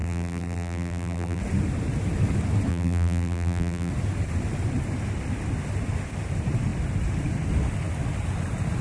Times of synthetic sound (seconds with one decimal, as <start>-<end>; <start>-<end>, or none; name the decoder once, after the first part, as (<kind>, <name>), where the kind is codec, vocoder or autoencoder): 0.0-1.4 (vocoder, BigVGAN v2); 2.7-3.9